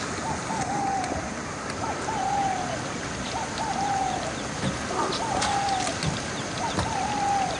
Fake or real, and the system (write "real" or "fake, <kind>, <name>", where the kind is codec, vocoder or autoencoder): real